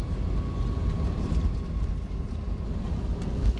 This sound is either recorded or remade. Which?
recorded